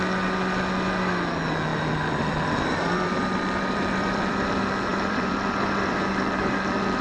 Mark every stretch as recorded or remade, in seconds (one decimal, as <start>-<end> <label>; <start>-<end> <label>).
0.0-1.7 recorded; 1.7-4.5 remade; 4.5-4.9 recorded; 4.9-6.0 remade; 6.0-7.0 recorded